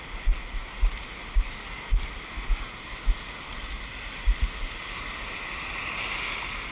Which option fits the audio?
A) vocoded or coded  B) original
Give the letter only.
B